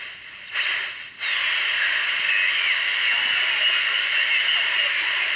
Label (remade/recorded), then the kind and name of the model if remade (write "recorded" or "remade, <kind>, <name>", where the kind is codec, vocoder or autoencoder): recorded